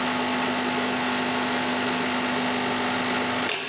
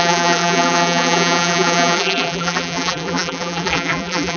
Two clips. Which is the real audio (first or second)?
first